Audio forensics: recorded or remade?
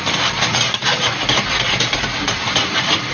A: recorded